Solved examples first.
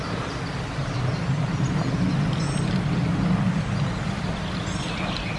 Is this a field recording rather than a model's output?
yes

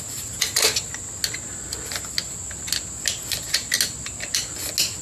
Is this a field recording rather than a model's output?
yes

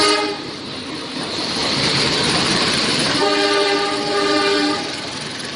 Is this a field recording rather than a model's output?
no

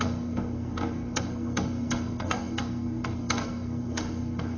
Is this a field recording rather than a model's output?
no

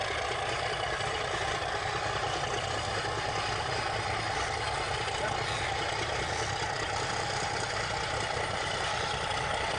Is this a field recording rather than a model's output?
yes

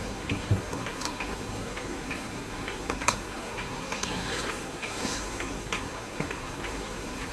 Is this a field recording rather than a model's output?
no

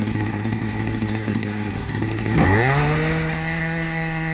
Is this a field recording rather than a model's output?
no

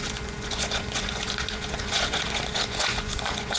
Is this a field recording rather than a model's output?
no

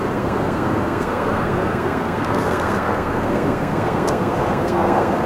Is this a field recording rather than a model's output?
no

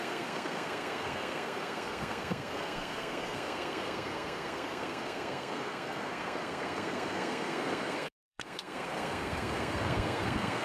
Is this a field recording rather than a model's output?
no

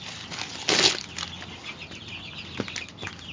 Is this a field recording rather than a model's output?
yes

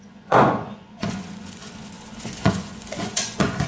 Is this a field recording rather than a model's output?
no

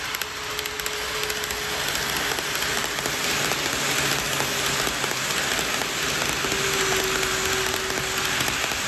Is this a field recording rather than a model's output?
yes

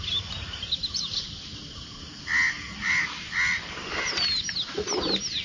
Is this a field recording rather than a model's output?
yes